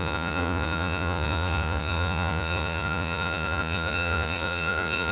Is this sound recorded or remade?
remade